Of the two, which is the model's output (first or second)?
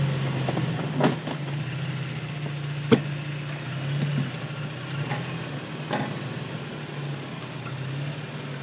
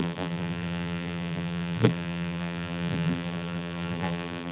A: second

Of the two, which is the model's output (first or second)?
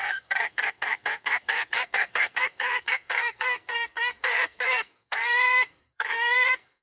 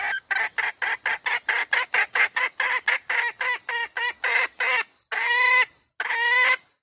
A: first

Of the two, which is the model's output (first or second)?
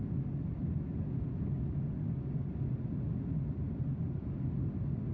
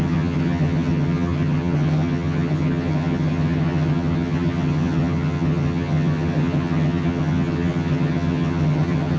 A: second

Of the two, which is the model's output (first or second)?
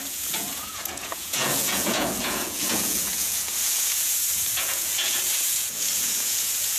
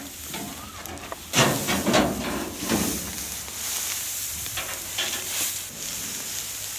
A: first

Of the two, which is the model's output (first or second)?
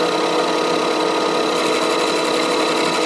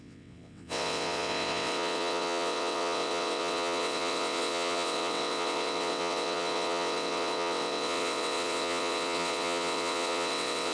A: second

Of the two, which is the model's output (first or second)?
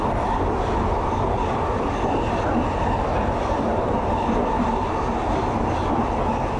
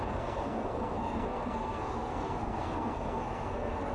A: second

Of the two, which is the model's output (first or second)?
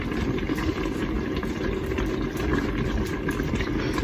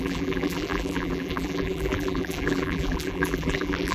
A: second